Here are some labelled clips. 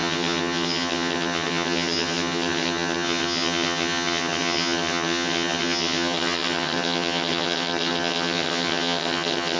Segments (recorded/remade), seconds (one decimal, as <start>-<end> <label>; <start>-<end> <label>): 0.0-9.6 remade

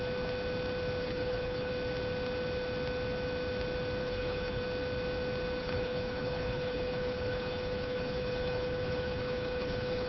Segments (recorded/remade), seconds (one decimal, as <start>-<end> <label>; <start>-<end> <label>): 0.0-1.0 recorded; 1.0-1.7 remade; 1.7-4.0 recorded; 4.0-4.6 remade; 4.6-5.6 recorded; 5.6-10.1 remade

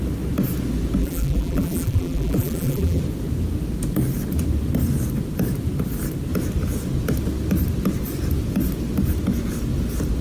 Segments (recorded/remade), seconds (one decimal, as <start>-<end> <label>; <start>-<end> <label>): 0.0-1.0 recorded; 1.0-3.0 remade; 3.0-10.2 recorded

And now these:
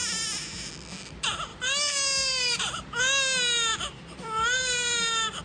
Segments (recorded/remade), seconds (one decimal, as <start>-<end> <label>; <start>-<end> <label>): 0.0-0.7 remade; 0.7-1.5 recorded; 1.5-3.0 remade; 3.0-3.7 recorded; 3.7-5.4 remade

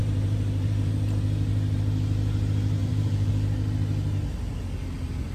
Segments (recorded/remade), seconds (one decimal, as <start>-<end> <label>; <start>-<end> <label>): 0.0-0.9 remade; 0.9-2.8 recorded; 2.8-3.3 remade; 3.3-5.3 recorded

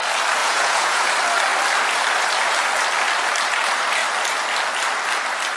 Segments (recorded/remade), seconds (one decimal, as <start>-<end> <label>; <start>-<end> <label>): 0.0-0.4 recorded; 0.4-1.1 remade; 1.1-5.6 recorded